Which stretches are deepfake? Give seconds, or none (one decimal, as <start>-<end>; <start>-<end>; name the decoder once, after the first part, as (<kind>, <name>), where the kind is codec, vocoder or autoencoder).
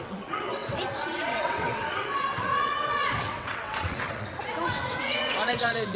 0.0-6.0 (vocoder, WaveNeXt)